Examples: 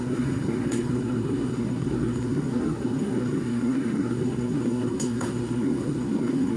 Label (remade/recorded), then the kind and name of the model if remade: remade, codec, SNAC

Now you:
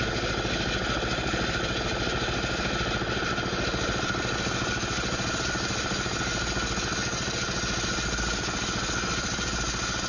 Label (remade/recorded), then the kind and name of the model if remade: recorded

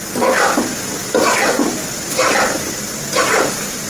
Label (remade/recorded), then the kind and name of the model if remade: recorded